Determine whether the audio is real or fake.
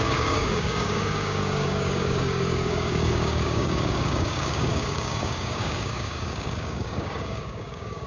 fake